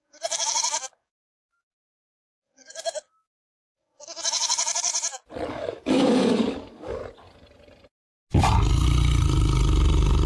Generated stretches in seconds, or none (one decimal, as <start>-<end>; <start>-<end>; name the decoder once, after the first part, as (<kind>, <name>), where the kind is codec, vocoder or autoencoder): 0.0-4.9 (codec, DAC); 5.5-7.0